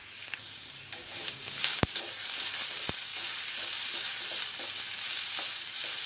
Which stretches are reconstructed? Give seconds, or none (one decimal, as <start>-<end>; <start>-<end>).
0.0-2.0